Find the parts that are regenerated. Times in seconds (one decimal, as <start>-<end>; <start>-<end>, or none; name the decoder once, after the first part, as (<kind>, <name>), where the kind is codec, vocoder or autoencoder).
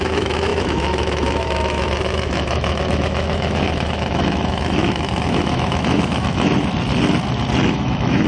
0.0-6.5 (autoencoder, DAC-VAE); 7.6-8.3